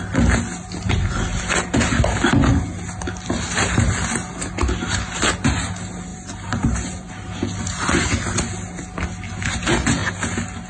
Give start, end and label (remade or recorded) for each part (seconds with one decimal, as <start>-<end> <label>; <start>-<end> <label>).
0.0-6.1 recorded; 6.1-7.1 remade; 7.1-10.7 recorded